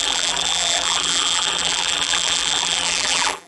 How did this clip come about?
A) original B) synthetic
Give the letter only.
B